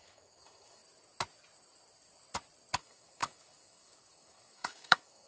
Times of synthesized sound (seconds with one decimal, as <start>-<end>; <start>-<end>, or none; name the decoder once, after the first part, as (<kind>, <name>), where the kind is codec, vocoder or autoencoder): 0.0-0.8 (autoencoder, DAC-VAE); 2.8-5.3